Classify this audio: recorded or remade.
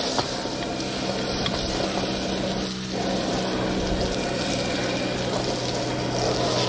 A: recorded